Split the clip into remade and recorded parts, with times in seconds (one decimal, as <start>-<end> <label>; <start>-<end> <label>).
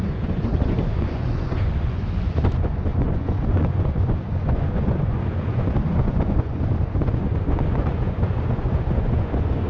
0.0-9.7 remade